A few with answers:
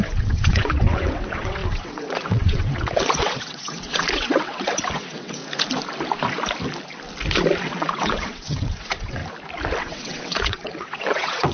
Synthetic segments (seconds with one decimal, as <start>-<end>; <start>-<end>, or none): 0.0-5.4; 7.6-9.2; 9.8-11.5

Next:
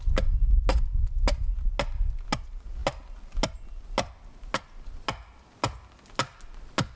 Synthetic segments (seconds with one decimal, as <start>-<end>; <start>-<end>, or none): none

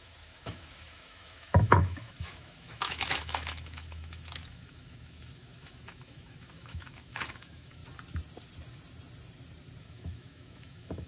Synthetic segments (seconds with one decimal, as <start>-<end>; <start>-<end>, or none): 0.0-7.8; 9.8-11.1

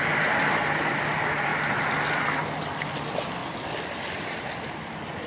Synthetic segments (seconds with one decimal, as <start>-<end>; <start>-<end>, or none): 0.0-1.5; 2.6-3.4; 4.0-5.3